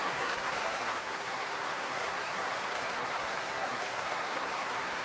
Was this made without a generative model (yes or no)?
no